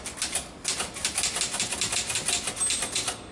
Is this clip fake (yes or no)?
no